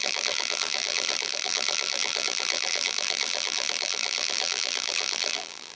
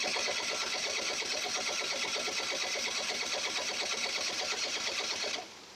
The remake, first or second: first